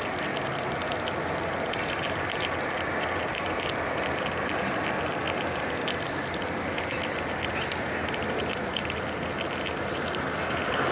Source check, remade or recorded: recorded